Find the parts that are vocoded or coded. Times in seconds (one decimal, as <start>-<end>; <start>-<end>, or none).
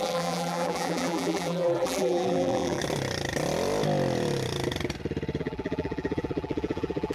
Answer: 0.0-2.8; 5.4-7.1